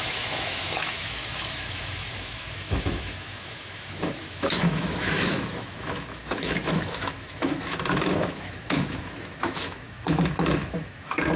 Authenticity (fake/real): fake